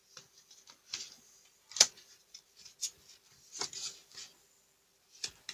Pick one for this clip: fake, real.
real